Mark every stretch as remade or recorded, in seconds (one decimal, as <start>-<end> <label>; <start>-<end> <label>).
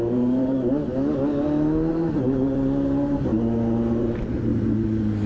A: 0.0-0.8 remade; 0.8-1.9 recorded; 1.9-3.3 remade; 3.3-4.0 recorded; 4.0-4.5 remade; 4.5-5.3 recorded